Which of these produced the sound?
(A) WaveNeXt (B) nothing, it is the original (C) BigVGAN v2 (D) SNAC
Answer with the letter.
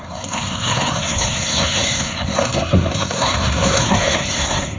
D